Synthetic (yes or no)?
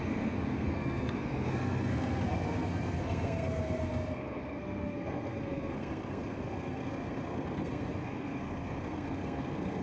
yes